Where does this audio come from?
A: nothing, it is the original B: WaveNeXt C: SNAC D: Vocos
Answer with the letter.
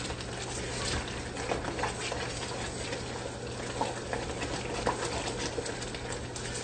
A